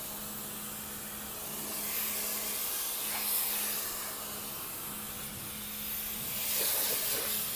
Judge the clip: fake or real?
real